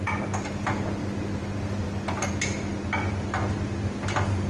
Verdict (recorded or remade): recorded